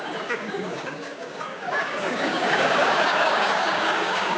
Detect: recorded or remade remade